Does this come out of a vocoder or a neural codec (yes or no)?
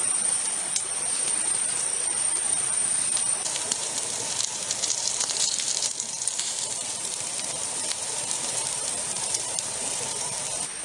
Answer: yes